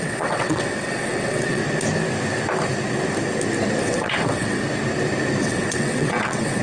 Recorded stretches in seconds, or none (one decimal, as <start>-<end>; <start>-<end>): 1.6-3.8; 4.6-5.4